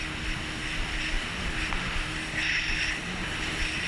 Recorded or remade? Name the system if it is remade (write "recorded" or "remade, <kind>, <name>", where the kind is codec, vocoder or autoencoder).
recorded